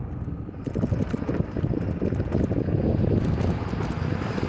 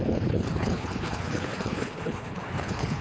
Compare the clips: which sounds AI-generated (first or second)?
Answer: second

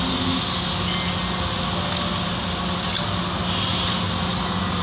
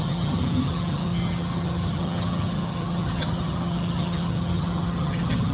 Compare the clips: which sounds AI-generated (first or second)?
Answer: second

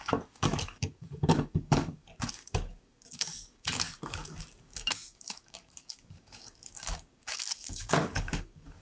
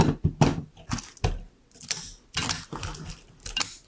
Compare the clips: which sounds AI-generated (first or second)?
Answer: first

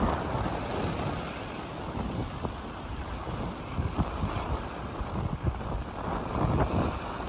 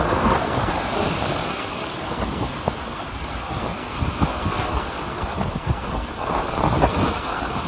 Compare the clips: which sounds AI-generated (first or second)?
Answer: second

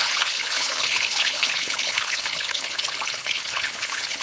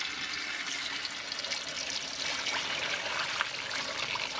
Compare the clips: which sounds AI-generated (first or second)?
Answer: first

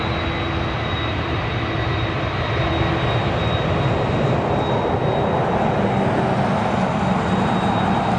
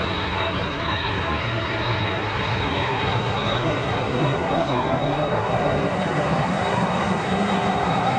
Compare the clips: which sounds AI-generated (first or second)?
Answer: second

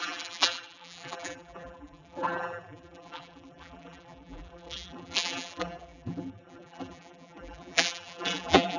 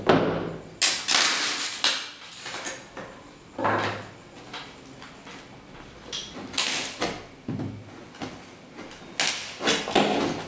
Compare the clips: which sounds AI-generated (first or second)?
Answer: first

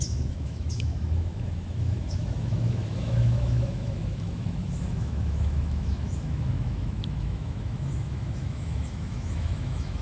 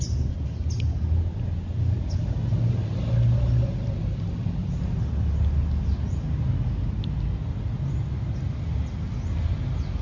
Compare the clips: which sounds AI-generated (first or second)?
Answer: first